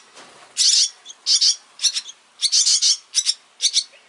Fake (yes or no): no